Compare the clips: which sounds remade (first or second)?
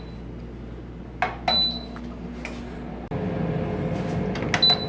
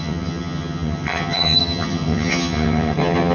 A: second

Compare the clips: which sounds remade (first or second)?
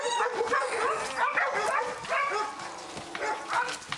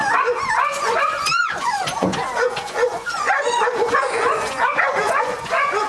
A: second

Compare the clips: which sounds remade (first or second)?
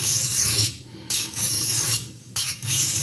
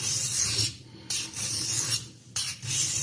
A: first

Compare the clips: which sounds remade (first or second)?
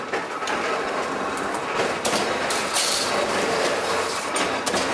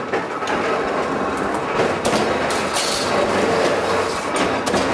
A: first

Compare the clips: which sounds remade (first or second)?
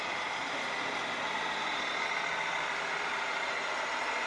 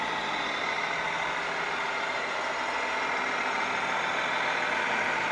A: first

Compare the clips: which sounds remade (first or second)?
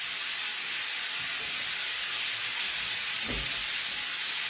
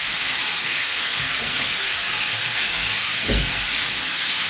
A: second